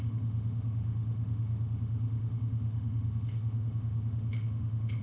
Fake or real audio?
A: fake